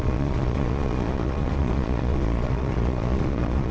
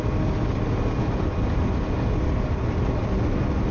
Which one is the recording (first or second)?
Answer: second